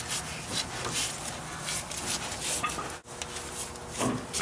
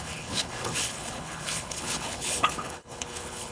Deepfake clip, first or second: second